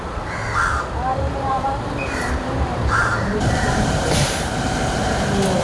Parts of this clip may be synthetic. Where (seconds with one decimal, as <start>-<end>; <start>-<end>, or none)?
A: 1.1-4.5